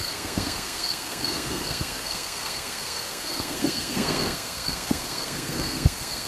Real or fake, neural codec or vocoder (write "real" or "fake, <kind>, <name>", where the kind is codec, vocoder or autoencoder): fake, codec, SNAC